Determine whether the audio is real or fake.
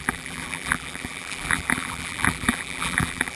fake